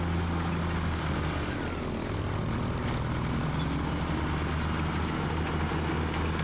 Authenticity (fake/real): real